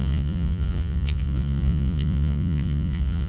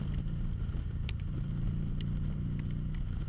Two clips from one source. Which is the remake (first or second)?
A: first